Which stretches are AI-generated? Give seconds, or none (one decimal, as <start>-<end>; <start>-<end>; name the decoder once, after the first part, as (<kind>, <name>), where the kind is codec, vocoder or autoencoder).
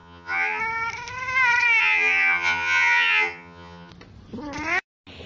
0.0-0.6 (vocoder, HiFi-GAN); 1.8-3.9